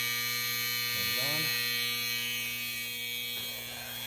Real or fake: real